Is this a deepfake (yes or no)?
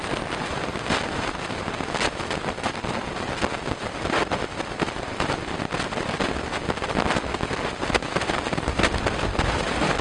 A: no